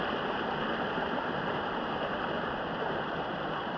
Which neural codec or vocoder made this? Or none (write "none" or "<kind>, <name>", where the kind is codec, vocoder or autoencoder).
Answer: none